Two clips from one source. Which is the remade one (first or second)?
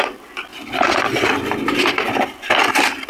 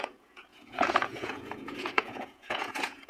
second